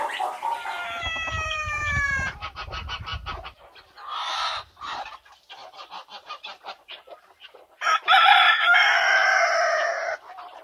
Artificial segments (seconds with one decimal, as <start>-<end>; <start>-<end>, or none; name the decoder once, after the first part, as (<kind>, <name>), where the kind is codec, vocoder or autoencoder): 0.0-3.1 (vocoder, BigVGAN v2); 4.4-10.6